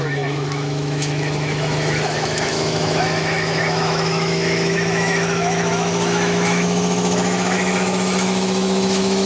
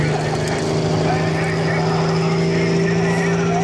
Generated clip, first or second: first